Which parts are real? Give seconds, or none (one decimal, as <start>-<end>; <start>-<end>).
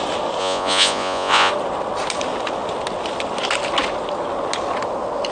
0.0-0.4; 1.5-5.3